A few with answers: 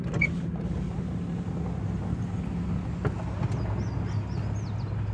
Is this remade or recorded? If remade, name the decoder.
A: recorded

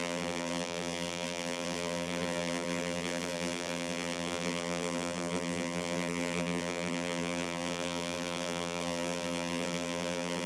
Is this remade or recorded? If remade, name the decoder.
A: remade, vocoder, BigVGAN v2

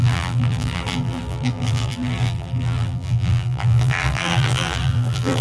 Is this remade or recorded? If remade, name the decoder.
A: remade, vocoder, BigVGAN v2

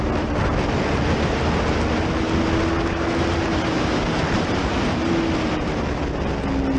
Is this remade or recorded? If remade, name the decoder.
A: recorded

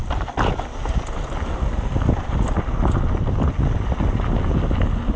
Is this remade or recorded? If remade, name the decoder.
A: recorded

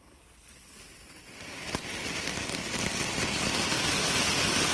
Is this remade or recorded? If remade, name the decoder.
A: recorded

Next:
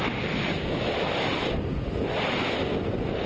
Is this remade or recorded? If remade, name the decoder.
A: recorded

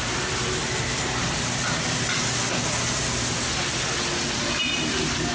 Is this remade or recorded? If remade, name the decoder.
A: recorded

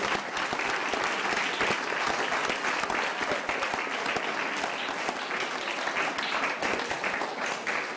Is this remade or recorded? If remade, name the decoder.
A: recorded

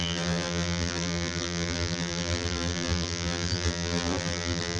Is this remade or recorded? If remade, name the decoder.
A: remade, vocoder, BigVGAN v2